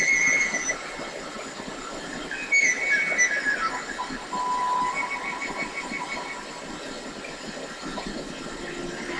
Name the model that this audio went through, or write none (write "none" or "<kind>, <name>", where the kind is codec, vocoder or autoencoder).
none